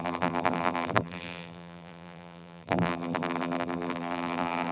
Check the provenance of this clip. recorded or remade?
remade